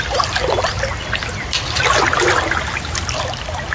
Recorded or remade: recorded